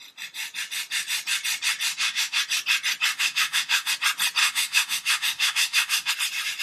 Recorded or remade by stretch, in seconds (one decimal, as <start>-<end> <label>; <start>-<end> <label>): 0.0-1.9 recorded; 1.9-2.4 remade; 2.4-3.1 recorded; 3.1-3.9 remade; 3.9-4.4 recorded; 4.4-6.1 remade; 6.1-6.6 recorded